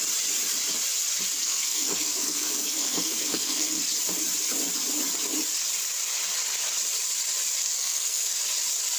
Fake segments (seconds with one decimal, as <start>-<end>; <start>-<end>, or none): 1.4-3.8; 7.6-8.4